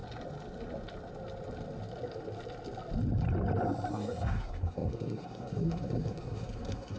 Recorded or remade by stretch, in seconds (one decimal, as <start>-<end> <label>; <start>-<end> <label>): 0.0-3.9 recorded; 3.9-7.0 remade